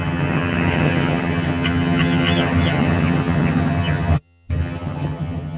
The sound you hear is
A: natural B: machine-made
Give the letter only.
B